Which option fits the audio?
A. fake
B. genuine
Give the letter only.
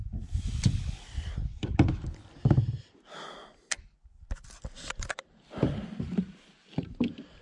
B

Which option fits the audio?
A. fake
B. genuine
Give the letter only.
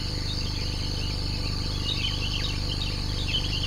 B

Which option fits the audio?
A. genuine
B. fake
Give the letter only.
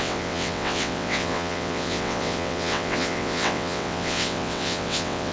B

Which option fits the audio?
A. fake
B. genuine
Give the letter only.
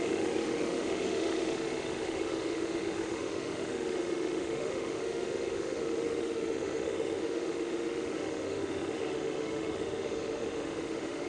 A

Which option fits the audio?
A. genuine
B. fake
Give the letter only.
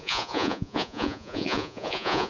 B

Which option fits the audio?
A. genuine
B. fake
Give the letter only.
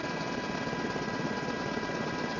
A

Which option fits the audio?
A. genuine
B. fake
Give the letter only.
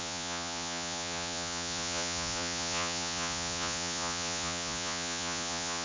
B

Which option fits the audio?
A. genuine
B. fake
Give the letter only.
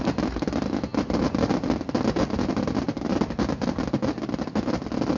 A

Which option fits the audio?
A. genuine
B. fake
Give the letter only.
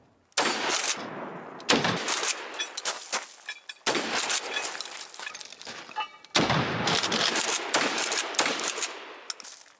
A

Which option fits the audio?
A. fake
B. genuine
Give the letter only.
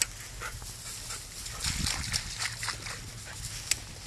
B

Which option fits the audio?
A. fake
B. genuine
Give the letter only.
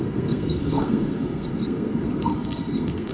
A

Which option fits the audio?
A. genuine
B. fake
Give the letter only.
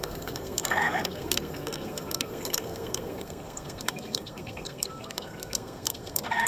B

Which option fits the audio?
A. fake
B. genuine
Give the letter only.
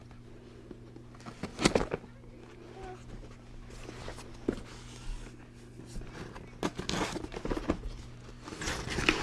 B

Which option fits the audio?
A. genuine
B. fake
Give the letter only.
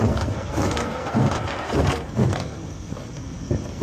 B